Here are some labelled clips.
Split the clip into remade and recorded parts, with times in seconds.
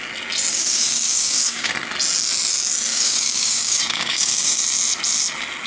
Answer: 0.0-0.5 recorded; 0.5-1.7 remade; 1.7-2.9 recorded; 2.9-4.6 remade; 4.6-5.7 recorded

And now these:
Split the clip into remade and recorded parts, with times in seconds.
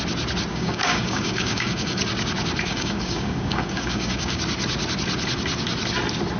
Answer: 0.0-0.5 recorded; 0.5-2.0 remade; 2.0-2.7 recorded; 2.7-4.4 remade; 4.4-6.4 recorded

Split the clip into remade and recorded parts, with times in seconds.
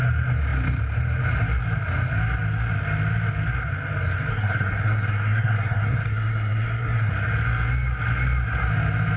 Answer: 0.0-4.3 recorded; 4.3-7.1 remade; 7.1-9.2 recorded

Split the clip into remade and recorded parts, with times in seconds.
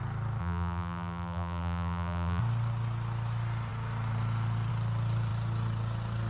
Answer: 0.0-0.4 recorded; 0.4-2.4 remade; 2.4-6.3 recorded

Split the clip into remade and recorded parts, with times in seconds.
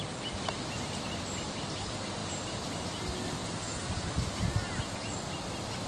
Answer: 0.0-5.9 recorded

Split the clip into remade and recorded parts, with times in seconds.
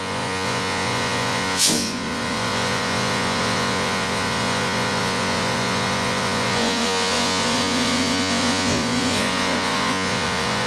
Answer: 0.0-10.7 remade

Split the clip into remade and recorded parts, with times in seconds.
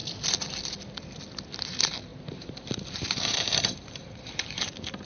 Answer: 0.0-2.1 recorded; 2.1-5.1 remade